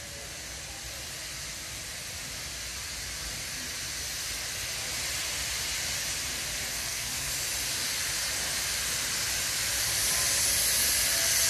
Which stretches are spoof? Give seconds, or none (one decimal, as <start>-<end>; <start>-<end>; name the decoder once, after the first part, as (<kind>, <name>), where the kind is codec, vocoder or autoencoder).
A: 6.7-7.3 (codec, SNAC)